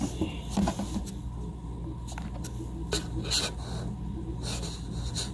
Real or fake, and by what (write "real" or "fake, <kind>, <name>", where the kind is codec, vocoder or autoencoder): real